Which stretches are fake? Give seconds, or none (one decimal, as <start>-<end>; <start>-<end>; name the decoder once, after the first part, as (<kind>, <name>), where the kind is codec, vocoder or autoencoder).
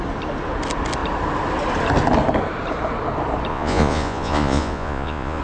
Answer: 3.5-5.4 (vocoder, Vocos)